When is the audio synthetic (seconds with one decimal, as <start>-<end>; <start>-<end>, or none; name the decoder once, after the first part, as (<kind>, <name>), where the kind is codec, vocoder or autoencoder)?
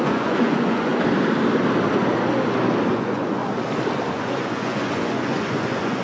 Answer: 0.0-0.9 (vocoder, Vocos); 2.9-3.4; 4.1-6.0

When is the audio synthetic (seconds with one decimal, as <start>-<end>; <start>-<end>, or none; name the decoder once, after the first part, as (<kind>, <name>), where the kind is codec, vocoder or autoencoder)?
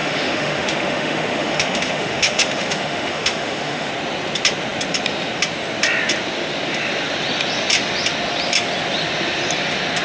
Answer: 0.0-3.9 (autoencoder, DAC-VAE)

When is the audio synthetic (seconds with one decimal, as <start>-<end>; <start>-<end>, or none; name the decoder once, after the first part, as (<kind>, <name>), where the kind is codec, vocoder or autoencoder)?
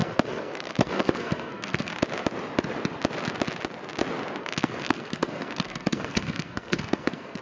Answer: 0.0-1.9 (codec, SNAC); 4.4-7.4